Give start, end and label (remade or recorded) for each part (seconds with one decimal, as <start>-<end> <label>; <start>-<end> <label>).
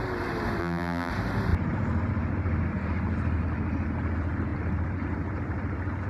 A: 0.0-0.6 recorded; 0.6-1.1 remade; 1.1-6.1 recorded